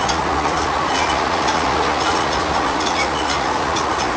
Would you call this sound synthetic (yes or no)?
yes